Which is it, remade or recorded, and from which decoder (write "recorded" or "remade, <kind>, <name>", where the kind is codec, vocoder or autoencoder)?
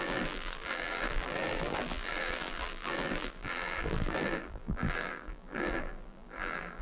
remade, vocoder, BigVGAN v2